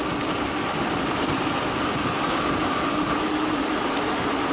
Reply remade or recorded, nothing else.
recorded